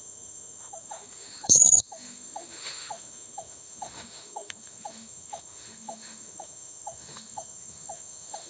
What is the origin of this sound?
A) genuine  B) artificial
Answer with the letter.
B